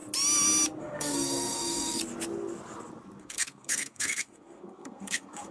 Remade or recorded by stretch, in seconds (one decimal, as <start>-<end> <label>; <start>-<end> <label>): 0.0-0.8 recorded; 0.8-2.0 remade; 2.0-3.2 recorded; 3.2-5.5 remade